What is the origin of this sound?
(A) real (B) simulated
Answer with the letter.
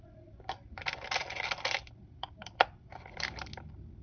A